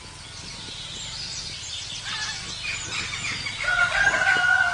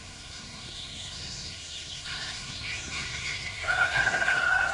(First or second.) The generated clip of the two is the second